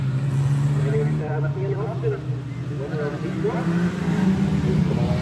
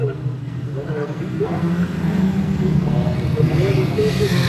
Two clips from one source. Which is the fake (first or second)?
second